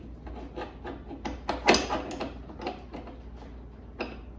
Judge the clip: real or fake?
real